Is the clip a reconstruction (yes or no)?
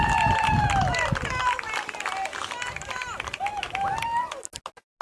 no